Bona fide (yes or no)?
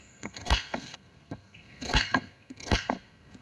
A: no